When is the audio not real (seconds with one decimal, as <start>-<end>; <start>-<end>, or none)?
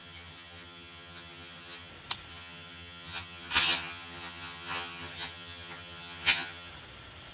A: 0.0-1.9; 2.3-6.7